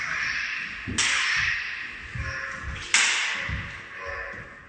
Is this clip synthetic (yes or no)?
no